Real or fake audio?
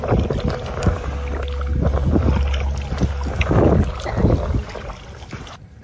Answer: real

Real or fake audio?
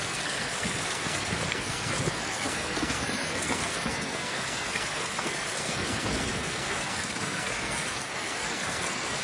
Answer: fake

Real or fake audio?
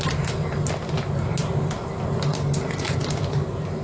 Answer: real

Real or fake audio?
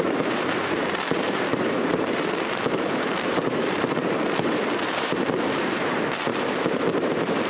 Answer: fake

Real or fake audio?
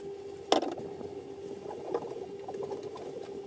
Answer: real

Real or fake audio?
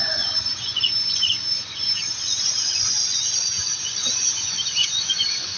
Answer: fake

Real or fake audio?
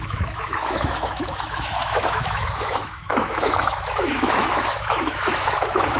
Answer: fake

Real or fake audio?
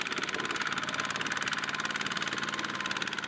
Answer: real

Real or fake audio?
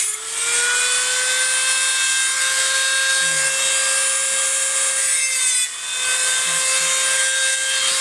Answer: real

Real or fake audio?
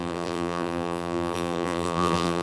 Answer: fake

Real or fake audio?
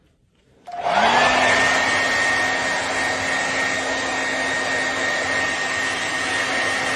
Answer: real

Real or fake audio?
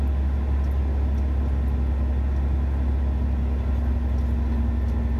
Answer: real